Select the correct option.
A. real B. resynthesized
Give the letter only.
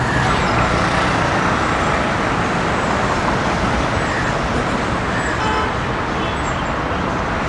A